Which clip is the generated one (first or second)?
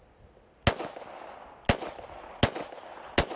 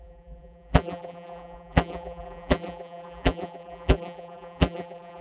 second